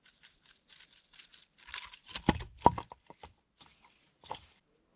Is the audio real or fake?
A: real